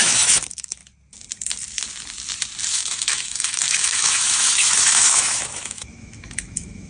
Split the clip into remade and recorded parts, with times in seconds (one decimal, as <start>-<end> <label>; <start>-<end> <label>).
0.0-0.8 remade; 0.8-2.7 recorded; 2.7-6.9 remade

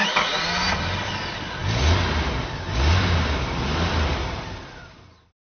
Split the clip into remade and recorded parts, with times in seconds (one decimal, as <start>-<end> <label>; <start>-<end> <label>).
0.0-5.4 recorded